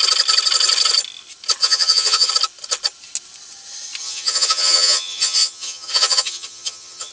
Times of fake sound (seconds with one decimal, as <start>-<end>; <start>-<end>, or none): 1.6-2.3; 4.0-7.1